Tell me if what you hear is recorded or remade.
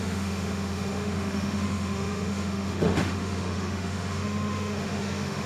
remade